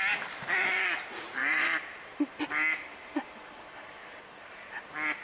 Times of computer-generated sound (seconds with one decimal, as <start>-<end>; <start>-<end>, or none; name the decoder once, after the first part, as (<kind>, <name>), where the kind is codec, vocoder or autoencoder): 1.4-2.4 (vocoder, BigVGAN v2); 2.9-4.2